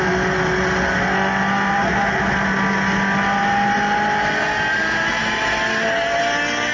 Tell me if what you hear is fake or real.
real